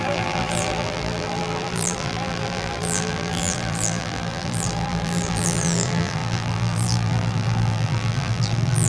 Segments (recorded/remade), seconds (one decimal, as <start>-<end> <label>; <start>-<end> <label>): 0.0-8.9 remade